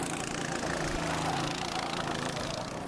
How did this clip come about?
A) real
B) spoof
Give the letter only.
A